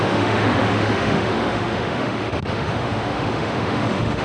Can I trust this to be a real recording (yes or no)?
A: no